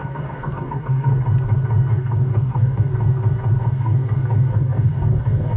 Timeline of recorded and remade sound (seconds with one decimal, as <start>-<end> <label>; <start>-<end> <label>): 0.0-1.1 remade; 1.1-1.9 recorded; 1.9-2.9 remade; 2.9-3.6 recorded; 3.6-5.6 remade